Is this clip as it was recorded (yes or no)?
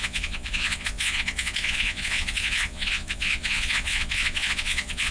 no